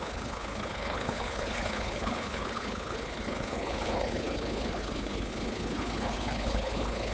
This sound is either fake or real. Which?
fake